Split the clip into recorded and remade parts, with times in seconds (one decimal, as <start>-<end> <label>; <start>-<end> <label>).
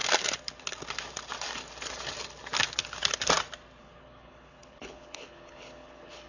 0.0-3.8 recorded; 3.8-6.3 remade